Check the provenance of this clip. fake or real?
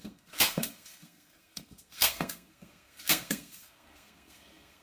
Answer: fake